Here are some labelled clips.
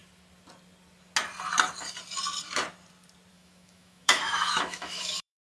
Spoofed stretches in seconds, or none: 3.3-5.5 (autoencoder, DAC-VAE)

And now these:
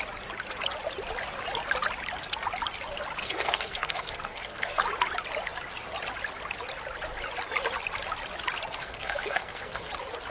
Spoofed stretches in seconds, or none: 3.2-4.8 (codec, SNAC); 8.8-9.9

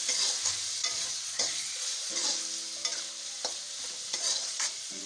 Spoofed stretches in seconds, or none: 0.8-2.4 (vocoder, Vocos); 4.0-5.1